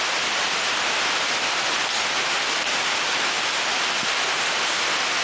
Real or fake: real